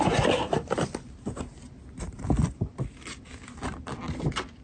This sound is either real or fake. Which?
real